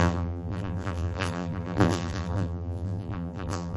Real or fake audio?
fake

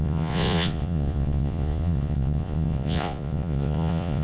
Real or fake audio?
fake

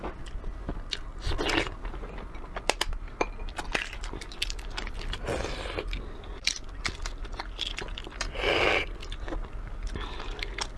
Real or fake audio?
real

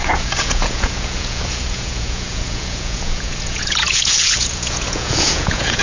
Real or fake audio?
fake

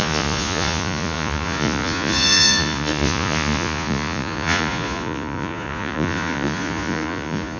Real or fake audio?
fake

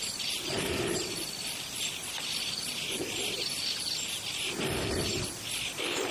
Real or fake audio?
real